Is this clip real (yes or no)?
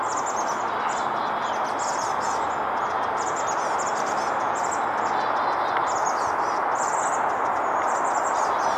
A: yes